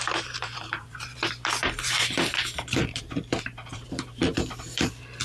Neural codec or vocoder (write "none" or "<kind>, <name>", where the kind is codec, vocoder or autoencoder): vocoder, BigVGAN v2